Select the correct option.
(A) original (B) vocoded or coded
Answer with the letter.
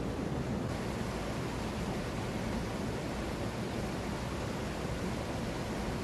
A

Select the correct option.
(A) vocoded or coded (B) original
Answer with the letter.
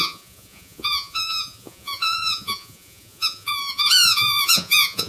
A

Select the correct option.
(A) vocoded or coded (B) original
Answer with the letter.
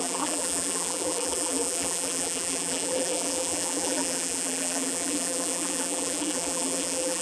A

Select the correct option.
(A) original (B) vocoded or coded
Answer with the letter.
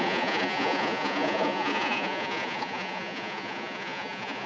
B